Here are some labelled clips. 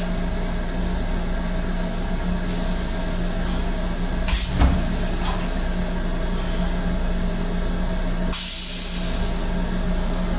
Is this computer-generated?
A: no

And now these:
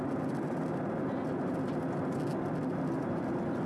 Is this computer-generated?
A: no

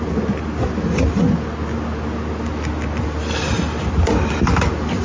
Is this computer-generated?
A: no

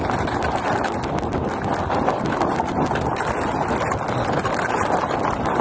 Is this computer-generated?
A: no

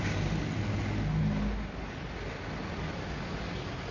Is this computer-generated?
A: no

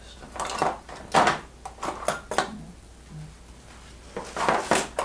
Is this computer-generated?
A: no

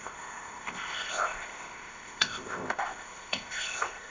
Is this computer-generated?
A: yes